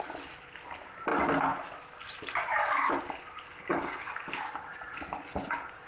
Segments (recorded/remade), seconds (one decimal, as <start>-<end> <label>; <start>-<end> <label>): 0.0-5.9 recorded